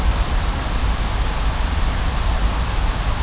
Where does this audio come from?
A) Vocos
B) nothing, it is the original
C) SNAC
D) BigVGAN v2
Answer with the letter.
B